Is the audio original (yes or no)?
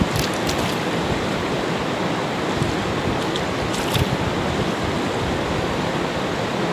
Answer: yes